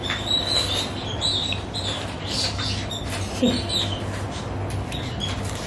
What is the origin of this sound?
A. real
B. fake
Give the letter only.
A